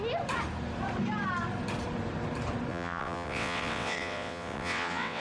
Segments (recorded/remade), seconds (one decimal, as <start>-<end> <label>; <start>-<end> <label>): 0.0-2.7 recorded; 2.7-5.2 remade